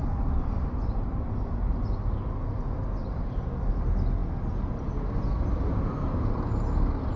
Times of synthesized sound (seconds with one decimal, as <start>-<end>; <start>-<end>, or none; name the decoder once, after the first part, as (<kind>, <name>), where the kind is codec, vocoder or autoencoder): none